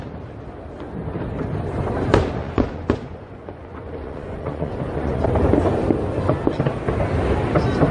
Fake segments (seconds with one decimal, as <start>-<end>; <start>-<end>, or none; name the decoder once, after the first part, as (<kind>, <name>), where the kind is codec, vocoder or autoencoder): 2.4-5.2 (vocoder, Vocos)